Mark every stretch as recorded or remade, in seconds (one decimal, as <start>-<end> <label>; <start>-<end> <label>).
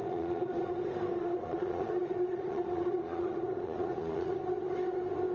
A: 0.0-0.7 remade; 0.7-1.2 recorded; 1.2-4.4 remade; 4.4-5.3 recorded